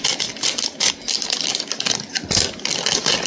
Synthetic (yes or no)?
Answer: no